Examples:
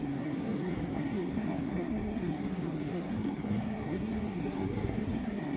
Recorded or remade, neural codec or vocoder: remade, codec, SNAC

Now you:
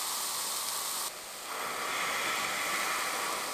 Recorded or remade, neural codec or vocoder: recorded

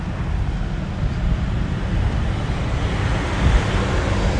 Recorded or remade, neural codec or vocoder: recorded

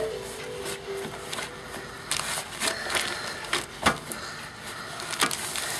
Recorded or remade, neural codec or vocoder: recorded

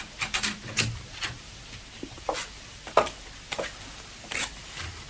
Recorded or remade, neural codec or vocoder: recorded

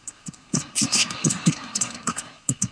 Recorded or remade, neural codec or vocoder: remade, codec, SNAC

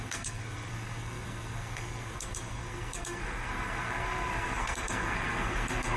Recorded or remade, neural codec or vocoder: remade, codec, SNAC